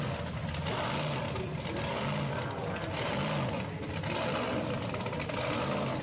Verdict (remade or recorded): recorded